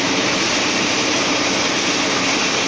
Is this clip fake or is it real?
real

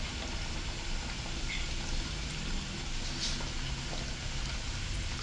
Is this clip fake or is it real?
real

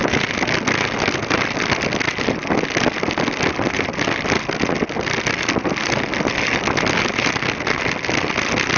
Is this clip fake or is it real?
real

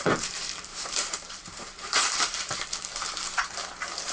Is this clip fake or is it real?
fake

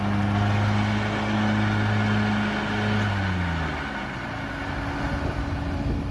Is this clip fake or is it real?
real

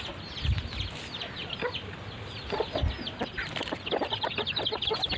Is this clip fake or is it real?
real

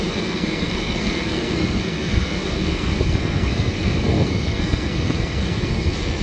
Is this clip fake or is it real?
fake